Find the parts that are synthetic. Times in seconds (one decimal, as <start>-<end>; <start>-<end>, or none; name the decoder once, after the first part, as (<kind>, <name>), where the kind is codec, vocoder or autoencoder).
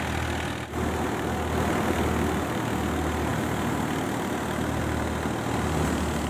none